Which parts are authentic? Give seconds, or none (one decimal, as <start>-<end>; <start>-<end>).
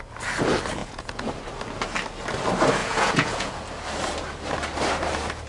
0.0-0.8; 1.3-2.8; 3.5-5.5